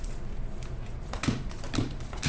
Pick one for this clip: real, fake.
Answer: real